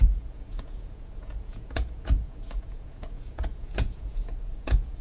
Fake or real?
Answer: fake